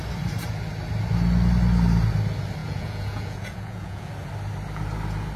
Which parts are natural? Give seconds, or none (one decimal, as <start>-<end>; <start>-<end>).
0.0-2.6; 4.1-5.4